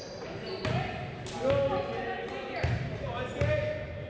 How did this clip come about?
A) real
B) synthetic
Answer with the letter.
A